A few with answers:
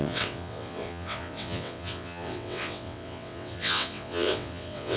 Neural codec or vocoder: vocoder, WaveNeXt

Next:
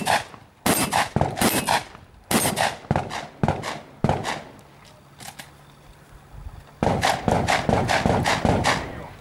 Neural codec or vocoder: none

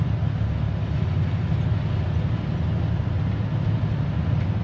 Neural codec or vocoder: none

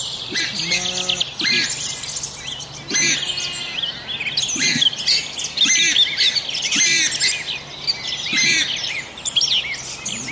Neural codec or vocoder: none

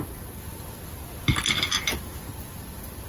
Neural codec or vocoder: none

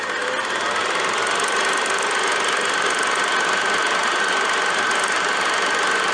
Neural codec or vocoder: none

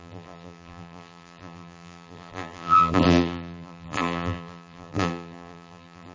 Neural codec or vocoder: vocoder, BigVGAN v2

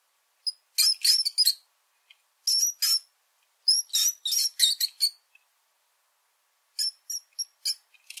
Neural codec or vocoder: none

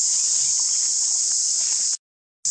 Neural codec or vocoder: none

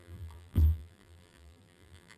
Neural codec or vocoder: vocoder, BigVGAN v2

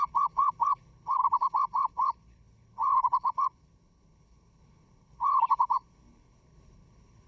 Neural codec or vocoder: codec, HILCodec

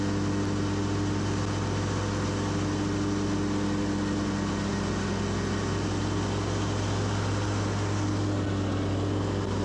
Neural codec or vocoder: none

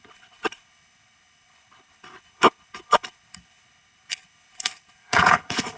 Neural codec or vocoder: codec, HILCodec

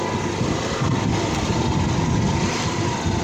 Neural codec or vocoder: none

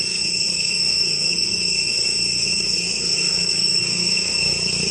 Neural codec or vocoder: codec, SNAC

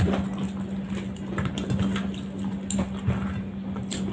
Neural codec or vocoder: none